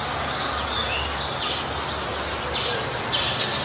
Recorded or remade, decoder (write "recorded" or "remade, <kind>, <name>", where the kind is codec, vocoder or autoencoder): recorded